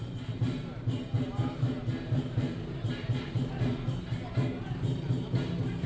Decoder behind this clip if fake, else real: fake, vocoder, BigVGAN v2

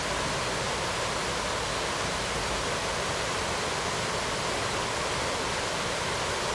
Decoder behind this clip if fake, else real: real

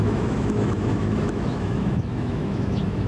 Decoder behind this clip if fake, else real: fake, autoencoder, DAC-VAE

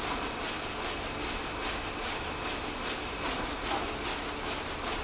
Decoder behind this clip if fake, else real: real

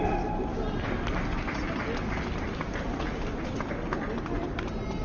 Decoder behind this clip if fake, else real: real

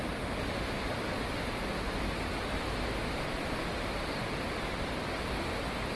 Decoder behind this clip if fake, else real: real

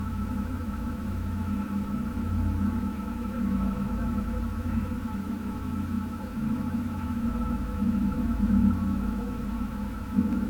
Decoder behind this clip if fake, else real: fake, autoencoder, DAC-VAE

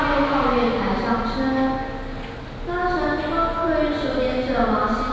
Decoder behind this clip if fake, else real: real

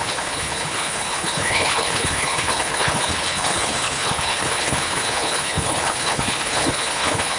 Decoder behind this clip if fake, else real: fake, codec, HILCodec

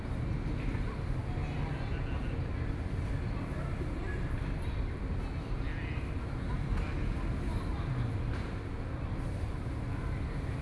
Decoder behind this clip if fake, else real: real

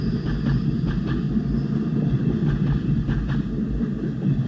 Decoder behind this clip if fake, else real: real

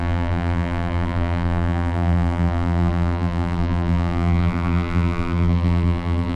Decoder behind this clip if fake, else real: fake, vocoder, BigVGAN v2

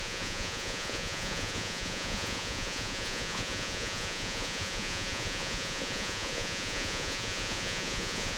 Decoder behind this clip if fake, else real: fake, vocoder, Vocos